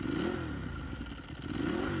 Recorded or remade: recorded